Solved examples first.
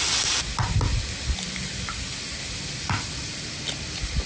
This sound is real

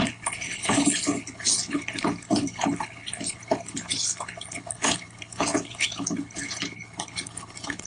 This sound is fake